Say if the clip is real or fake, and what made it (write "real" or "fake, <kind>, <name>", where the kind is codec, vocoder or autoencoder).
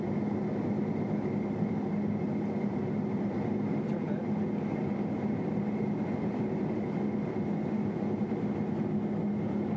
real